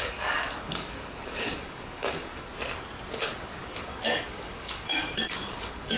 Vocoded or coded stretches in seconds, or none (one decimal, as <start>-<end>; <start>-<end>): 0.0-2.5; 3.1-6.0